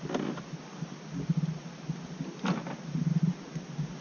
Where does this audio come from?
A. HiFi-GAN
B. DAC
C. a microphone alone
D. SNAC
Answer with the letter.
C